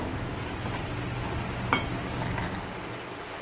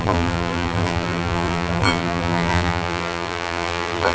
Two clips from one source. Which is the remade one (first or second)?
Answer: second